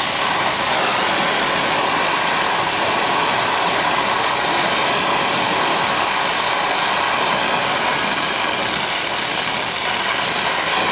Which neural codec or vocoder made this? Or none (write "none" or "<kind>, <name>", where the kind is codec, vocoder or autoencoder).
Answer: none